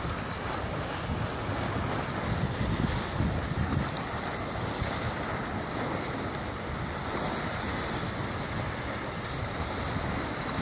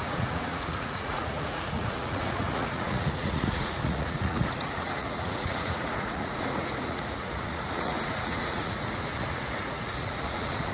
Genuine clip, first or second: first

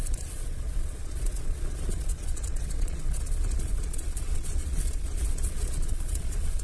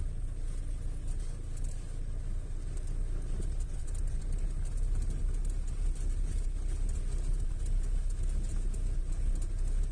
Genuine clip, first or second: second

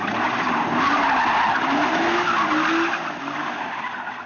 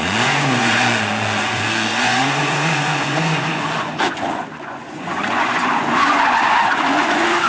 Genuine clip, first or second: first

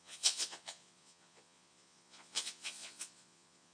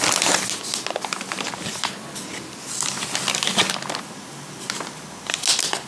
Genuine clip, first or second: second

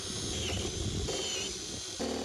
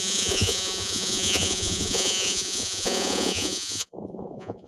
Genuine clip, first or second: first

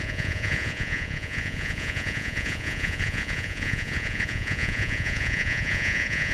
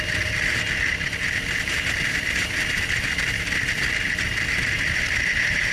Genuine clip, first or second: second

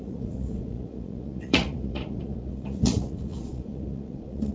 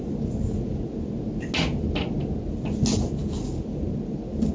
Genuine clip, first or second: second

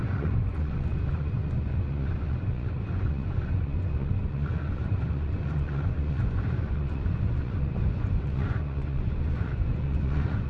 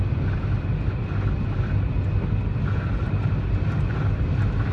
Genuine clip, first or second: second